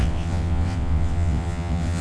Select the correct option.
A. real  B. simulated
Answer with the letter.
B